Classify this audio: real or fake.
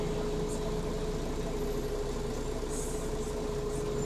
real